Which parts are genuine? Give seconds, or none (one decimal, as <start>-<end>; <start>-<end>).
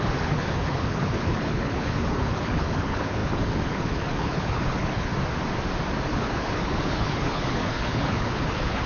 5.1-6.1